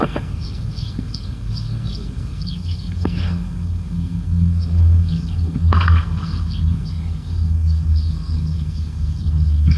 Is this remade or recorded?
remade